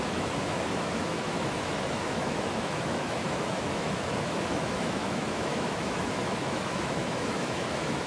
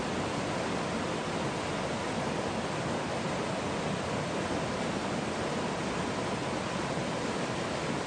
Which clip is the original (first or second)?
second